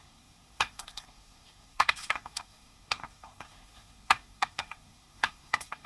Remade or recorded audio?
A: remade